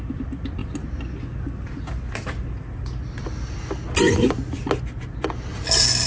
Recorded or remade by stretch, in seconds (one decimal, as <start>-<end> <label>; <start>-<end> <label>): 0.0-6.1 recorded